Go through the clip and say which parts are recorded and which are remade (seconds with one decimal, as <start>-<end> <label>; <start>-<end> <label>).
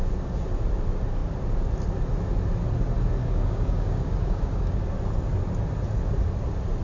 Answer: 0.0-3.2 recorded; 3.2-4.8 remade; 4.8-6.8 recorded